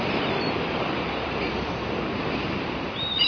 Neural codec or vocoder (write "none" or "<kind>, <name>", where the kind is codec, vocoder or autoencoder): vocoder, BigVGAN v2